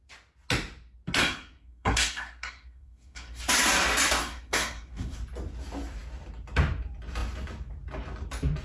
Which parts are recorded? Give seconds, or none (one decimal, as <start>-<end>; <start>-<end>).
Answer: 0.0-1.2; 3.4-4.2; 5.2-8.6